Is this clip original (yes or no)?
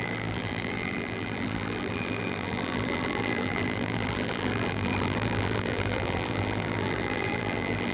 no